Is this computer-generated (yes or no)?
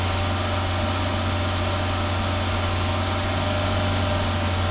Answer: no